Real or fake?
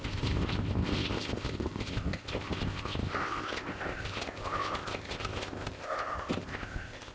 fake